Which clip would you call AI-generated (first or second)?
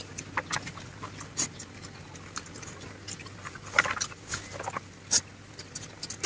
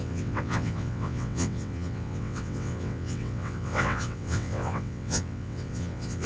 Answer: second